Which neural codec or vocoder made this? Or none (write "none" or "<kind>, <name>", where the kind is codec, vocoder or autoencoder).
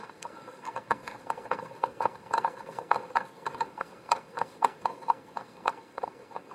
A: codec, SNAC